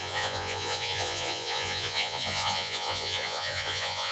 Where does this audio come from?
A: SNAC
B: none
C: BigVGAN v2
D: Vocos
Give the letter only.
D